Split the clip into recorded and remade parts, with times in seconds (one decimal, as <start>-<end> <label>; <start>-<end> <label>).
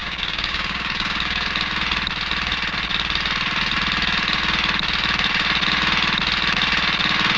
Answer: 0.0-1.5 remade; 1.5-7.4 recorded